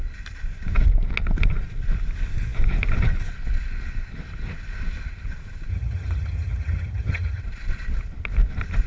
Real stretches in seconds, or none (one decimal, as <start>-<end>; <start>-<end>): 0.0-5.7; 7.4-8.9